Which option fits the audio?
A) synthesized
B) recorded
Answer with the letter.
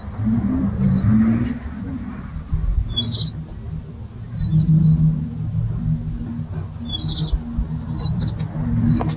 B